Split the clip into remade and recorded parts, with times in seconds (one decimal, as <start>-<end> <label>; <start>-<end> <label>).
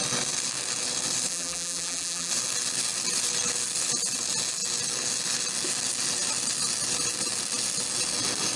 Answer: 0.0-1.3 recorded; 1.3-2.3 remade; 2.3-8.6 recorded